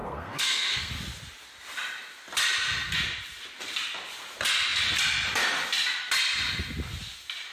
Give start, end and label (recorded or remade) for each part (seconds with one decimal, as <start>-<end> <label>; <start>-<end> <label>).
0.0-0.9 remade; 0.9-7.5 recorded